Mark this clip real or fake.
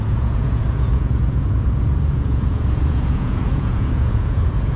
fake